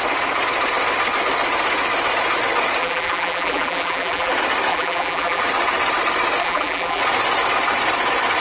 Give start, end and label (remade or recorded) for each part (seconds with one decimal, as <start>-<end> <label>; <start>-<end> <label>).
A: 0.0-2.8 recorded; 2.8-4.3 remade; 4.3-4.7 recorded; 4.7-5.4 remade; 5.4-6.4 recorded; 6.4-7.0 remade; 7.0-8.4 recorded